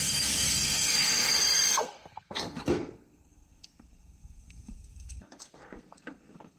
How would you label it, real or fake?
fake